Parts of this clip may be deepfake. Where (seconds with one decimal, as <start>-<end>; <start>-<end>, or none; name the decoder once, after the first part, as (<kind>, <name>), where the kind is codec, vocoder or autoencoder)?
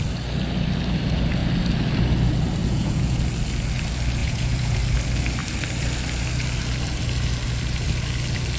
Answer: 2.6-3.2 (vocoder, Vocos); 4.2-4.8